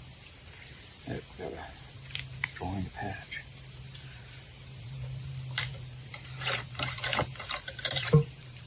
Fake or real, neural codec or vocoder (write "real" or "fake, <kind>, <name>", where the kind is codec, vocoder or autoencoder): fake, vocoder, BigVGAN v2